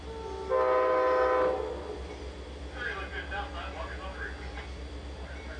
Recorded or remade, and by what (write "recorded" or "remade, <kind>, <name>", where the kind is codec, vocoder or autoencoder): recorded